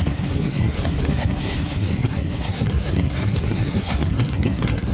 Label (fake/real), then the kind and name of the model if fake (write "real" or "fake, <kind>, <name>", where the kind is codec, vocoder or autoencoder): fake, codec, SNAC